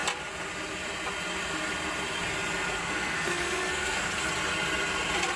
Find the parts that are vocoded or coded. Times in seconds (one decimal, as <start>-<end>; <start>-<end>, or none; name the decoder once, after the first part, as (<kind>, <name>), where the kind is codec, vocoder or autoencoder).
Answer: 2.8-4.1 (codec, SNAC)